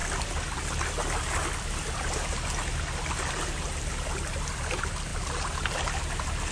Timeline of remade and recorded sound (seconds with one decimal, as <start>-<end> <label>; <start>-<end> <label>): 0.0-6.5 recorded